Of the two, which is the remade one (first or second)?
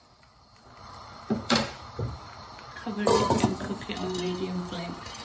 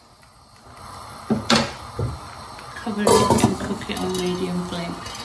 first